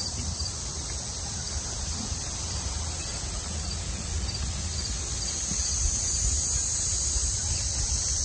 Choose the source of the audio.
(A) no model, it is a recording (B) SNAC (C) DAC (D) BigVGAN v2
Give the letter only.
D